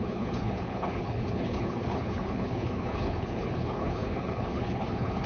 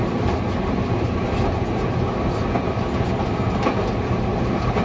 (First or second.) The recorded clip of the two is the second